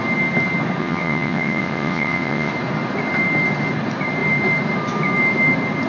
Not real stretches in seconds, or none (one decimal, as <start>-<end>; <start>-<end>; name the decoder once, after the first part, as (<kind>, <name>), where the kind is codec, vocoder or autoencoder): 0.8-2.5 (vocoder, WaveNeXt)